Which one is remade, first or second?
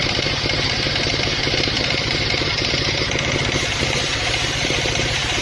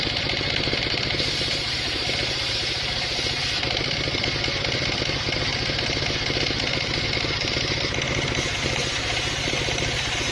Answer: first